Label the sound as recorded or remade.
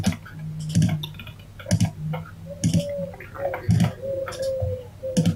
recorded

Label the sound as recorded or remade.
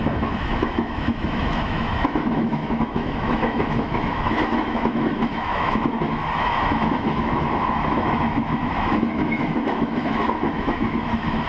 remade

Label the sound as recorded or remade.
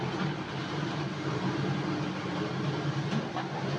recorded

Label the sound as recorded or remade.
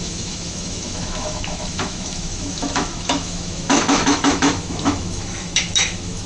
remade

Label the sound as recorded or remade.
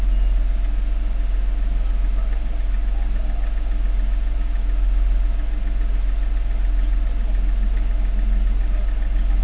recorded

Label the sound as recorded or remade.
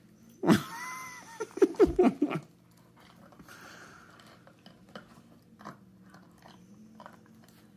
recorded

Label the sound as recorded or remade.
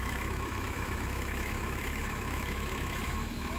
remade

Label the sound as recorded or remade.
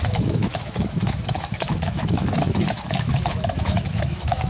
remade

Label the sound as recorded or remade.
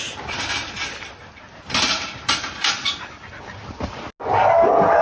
recorded